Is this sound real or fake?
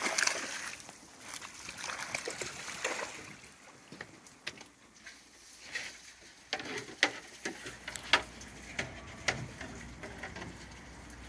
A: real